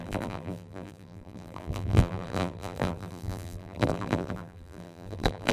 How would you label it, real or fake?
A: fake